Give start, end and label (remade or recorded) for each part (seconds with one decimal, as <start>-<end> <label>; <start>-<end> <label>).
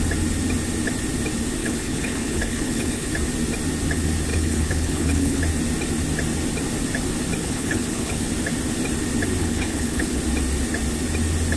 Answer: 0.0-1.6 recorded; 1.6-3.1 remade; 3.1-4.3 recorded; 4.3-5.4 remade; 5.4-7.4 recorded; 7.4-8.3 remade; 8.3-9.4 recorded; 9.4-10.2 remade; 10.2-11.6 recorded